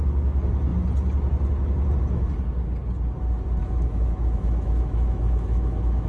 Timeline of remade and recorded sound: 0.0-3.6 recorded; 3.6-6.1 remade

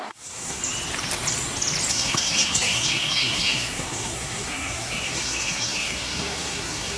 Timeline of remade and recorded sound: 0.0-0.6 remade; 0.6-1.9 recorded; 1.9-7.0 remade

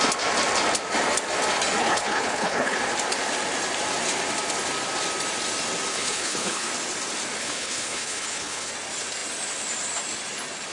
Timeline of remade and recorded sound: 0.0-1.8 recorded; 1.8-2.8 remade; 2.8-5.9 recorded; 5.9-6.7 remade; 6.7-7.4 recorded; 7.4-8.7 remade; 8.7-10.7 recorded